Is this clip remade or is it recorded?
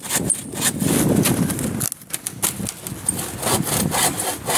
recorded